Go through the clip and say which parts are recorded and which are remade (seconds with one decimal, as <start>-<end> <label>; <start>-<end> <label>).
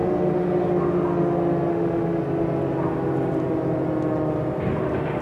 0.0-1.7 recorded; 1.7-2.2 remade; 2.2-5.2 recorded